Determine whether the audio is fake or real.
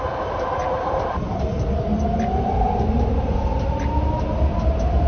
real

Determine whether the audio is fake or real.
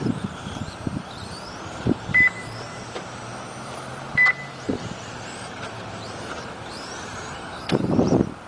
fake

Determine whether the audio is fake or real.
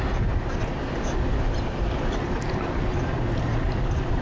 real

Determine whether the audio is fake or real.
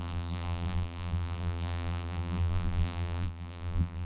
fake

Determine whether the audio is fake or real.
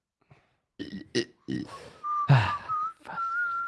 real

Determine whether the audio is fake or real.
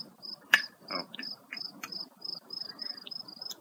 fake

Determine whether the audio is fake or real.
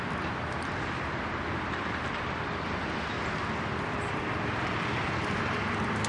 real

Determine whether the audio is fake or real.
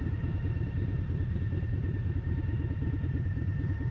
fake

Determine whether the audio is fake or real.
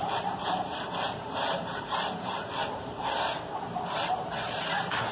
fake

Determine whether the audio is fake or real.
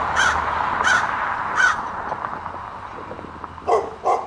fake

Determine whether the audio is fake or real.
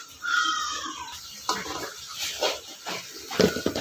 fake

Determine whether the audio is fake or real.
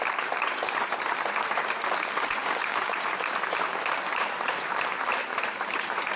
fake